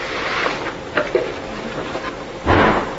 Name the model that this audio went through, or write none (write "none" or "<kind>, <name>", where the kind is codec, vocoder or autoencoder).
none